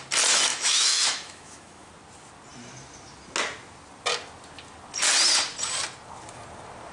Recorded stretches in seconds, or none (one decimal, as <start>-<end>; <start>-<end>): 0.0-0.5; 1.9-6.9

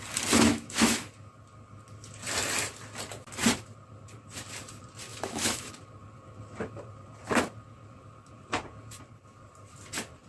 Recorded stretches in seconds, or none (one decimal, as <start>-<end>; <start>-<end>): 0.0-0.5; 1.1-5.1; 5.7-10.3